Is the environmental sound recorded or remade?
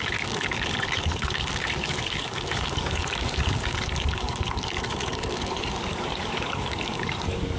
remade